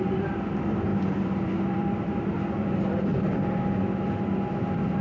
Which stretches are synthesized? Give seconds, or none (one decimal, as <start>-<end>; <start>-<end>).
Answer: 0.9-2.1